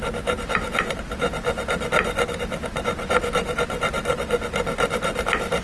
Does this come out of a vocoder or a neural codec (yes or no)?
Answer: no